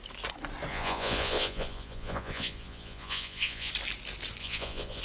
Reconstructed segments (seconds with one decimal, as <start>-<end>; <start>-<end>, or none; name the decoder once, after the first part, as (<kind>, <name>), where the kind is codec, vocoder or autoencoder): 0.7-3.7 (vocoder, Vocos); 4.4-5.0